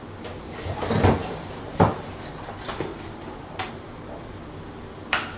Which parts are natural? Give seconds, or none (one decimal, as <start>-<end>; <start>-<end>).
0.0-1.2; 2.2-2.9; 3.7-5.4